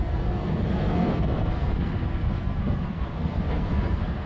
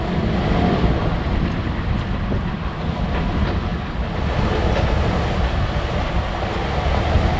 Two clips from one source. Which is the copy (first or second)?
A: first